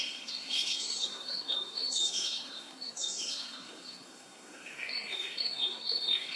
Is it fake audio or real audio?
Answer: fake